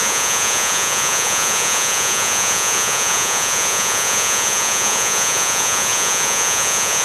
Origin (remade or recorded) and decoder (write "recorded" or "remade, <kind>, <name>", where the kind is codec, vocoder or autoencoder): remade, vocoder, Vocos